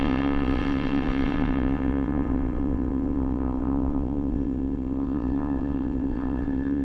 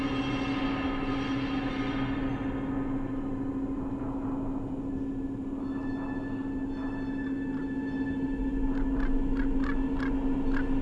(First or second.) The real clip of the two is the second